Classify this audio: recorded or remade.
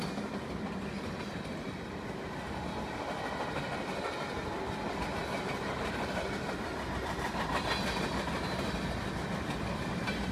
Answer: recorded